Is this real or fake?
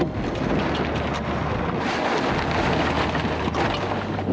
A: real